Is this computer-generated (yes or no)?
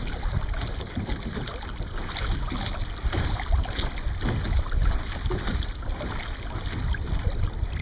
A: no